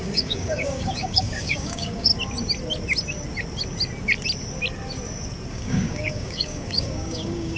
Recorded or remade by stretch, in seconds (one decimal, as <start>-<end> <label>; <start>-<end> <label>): 0.0-2.1 remade; 2.1-5.5 recorded; 5.5-7.6 remade